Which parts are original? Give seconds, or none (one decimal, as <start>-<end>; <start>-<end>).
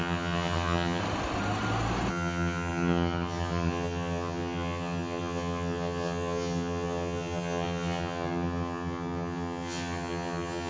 1.0-2.1